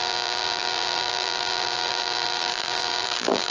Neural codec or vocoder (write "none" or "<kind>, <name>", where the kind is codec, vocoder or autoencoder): vocoder, BigVGAN v2